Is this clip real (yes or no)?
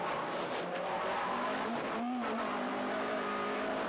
no